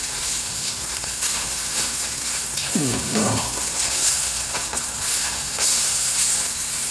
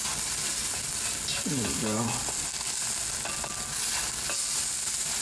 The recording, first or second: second